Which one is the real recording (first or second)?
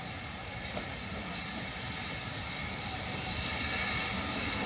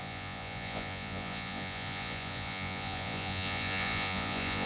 first